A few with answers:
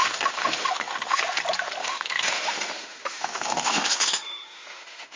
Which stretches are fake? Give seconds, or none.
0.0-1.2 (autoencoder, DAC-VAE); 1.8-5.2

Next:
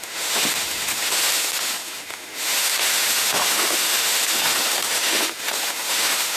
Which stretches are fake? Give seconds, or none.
0.0-6.4 (autoencoder, DAC-VAE)